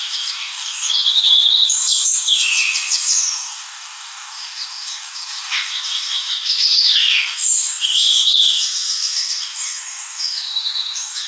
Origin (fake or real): fake